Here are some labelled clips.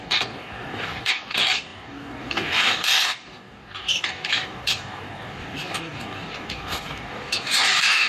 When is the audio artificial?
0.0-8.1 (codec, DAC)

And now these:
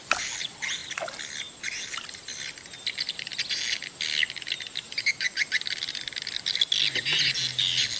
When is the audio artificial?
none

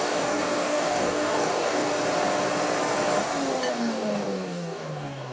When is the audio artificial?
0.0-1.9 (codec, DAC); 3.7-5.3

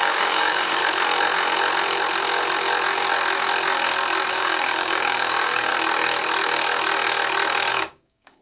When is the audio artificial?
0.0-0.8 (codec, DAC); 4.3-5.7; 7.7-8.4

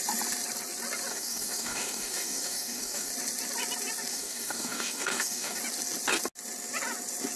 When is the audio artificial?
1.1-3.1 (codec, DAC); 4.1-5.6

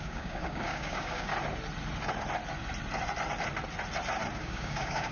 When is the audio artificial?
0.0-1.3 (codec, DAC); 4.4-5.1